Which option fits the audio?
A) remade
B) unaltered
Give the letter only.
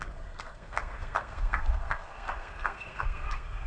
A